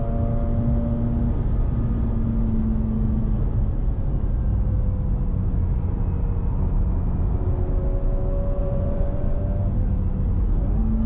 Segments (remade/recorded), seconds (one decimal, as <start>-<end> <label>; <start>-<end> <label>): 0.0-8.6 recorded; 8.6-9.4 remade; 9.4-11.1 recorded